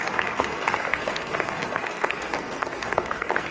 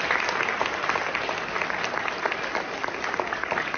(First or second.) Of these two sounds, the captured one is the second